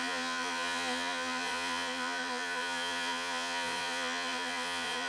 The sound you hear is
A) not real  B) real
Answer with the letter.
A